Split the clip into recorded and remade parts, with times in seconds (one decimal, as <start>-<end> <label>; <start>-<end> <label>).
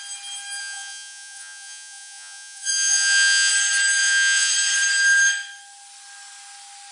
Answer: 0.0-0.6 recorded; 0.6-3.5 remade; 3.5-4.0 recorded; 4.0-4.5 remade; 4.5-6.9 recorded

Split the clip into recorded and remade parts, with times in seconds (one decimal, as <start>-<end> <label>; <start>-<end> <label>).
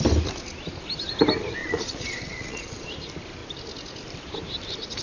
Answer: 0.0-1.6 recorded; 1.6-2.9 remade; 2.9-5.0 recorded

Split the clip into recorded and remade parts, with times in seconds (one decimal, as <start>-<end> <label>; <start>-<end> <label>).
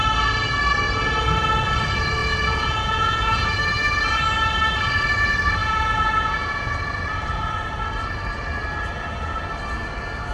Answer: 0.0-2.2 recorded; 2.2-3.6 remade; 3.6-5.6 recorded; 5.6-6.7 remade; 6.7-10.3 recorded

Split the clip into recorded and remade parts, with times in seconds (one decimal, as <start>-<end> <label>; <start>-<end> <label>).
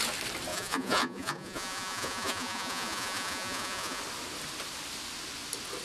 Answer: 0.0-0.5 recorded; 0.5-4.0 remade; 4.0-5.8 recorded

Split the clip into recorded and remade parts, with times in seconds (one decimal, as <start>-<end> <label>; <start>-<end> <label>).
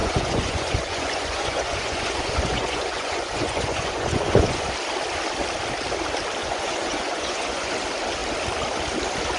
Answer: 0.0-4.7 remade; 4.7-6.4 recorded; 6.4-7.7 remade; 7.7-9.4 recorded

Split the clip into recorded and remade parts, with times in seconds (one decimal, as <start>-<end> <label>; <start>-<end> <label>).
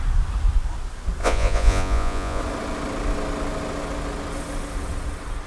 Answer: 0.0-1.2 recorded; 1.2-2.4 remade; 2.4-5.5 recorded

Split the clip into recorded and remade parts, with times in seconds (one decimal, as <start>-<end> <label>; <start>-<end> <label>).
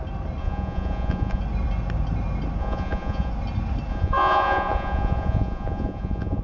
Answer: 0.0-0.4 recorded; 0.4-1.4 remade; 1.4-2.6 recorded; 2.6-3.3 remade; 3.3-3.9 recorded; 3.9-6.4 remade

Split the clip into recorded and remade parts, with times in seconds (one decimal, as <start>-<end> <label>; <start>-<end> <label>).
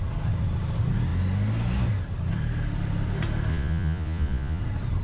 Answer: 0.0-3.5 recorded; 3.5-4.6 remade; 4.6-5.0 recorded